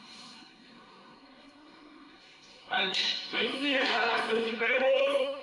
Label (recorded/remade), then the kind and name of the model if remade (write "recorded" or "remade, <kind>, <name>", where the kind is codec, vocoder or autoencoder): remade, codec, SNAC